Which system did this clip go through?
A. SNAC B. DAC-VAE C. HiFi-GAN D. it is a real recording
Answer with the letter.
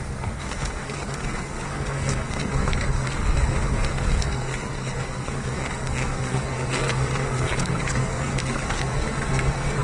A